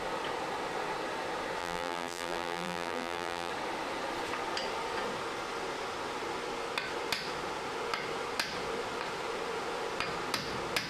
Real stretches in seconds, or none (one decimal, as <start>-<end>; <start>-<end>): 0.0-1.6; 3.5-10.9